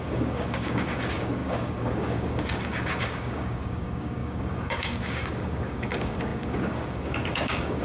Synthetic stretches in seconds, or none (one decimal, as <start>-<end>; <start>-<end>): 0.0-7.8